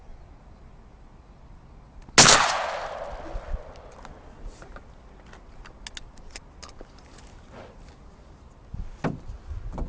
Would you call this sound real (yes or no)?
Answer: yes